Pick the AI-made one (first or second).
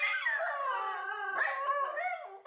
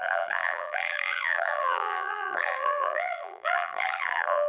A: second